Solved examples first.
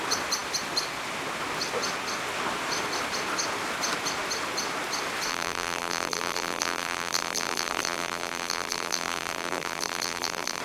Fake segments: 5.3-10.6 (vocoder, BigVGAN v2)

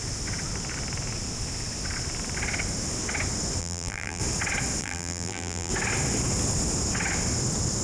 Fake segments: 3.6-4.2 (vocoder, BigVGAN v2); 4.8-5.7

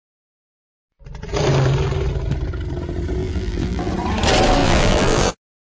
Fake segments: 3.2-3.9 (vocoder, BigVGAN v2); 4.6-5.3

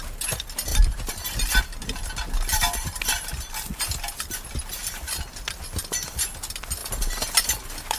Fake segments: 0.7-1.6 (vocoder, BigVGAN v2)

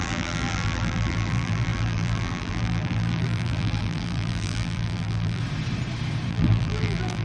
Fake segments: 0.0-5.4 (vocoder, BigVGAN v2); 6.3-7.2